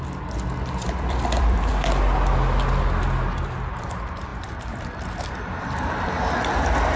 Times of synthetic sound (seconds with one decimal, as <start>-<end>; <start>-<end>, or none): 0.5-1.7; 4.3-6.1